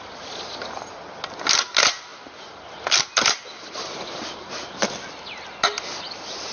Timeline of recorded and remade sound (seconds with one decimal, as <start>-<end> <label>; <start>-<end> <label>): 0.0-6.5 recorded

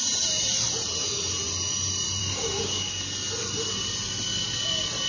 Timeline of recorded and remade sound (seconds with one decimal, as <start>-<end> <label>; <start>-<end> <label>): 0.0-2.2 recorded; 2.2-3.0 remade; 3.0-5.1 recorded